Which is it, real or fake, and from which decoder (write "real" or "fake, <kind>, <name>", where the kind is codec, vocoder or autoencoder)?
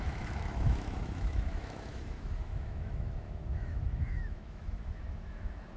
fake, autoencoder, DAC-VAE